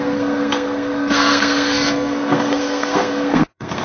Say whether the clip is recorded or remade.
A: remade